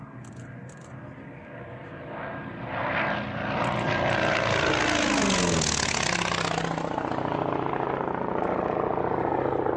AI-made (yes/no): no